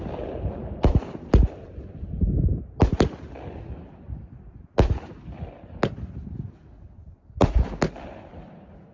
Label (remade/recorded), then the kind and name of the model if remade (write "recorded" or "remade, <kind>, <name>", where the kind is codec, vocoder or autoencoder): recorded